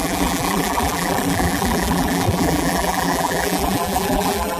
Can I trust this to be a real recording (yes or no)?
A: no